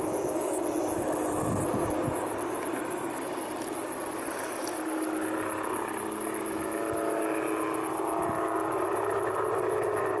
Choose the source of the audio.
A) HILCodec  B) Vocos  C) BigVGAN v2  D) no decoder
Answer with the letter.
D